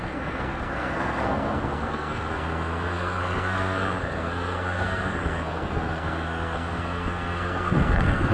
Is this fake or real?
fake